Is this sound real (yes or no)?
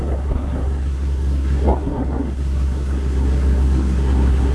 no